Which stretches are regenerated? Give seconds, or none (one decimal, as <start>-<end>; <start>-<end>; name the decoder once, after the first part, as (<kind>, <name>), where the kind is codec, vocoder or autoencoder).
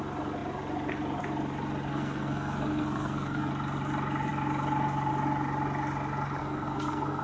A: 1.9-3.5 (codec, SNAC); 6.4-7.2